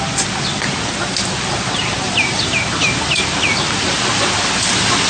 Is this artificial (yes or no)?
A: no